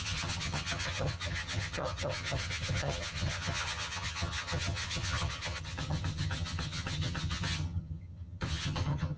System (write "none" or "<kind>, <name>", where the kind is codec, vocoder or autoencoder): vocoder, HiFi-GAN